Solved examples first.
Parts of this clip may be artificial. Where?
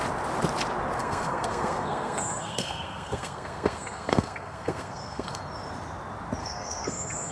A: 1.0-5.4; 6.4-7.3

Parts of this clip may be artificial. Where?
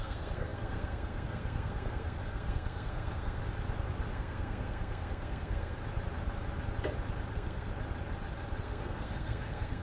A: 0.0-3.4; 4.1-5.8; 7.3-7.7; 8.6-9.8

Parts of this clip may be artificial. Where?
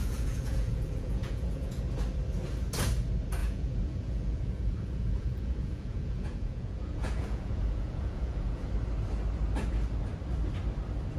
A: 0.0-1.8; 3.4-8.6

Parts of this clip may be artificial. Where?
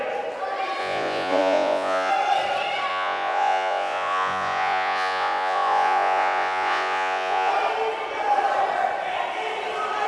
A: 0.8-2.1; 2.9-7.5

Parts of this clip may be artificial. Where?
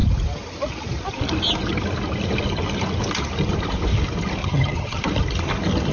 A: 4.4-5.0